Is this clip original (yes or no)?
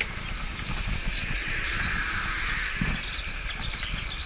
yes